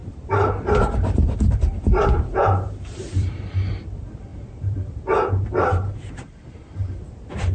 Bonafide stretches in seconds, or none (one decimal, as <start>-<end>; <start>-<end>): none